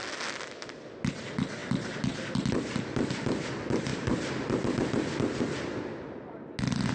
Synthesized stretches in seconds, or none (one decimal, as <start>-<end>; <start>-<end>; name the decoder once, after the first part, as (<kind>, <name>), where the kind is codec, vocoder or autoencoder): none